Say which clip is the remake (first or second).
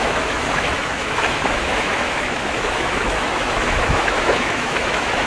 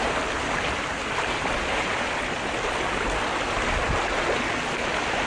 first